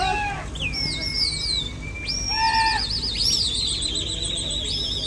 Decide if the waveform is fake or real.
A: real